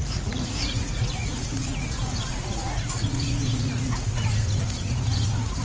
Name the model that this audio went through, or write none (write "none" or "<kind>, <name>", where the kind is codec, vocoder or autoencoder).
vocoder, Vocos